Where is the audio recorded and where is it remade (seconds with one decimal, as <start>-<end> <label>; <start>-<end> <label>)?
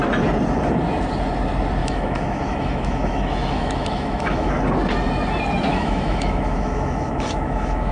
0.0-1.8 recorded; 1.8-4.5 remade; 4.5-5.7 recorded; 5.7-7.9 remade